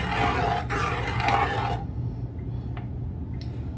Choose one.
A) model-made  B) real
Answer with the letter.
B